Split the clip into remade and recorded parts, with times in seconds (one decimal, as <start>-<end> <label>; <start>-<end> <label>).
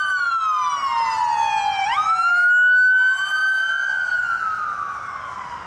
0.0-5.7 recorded